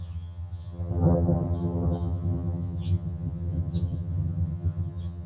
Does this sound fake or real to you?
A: fake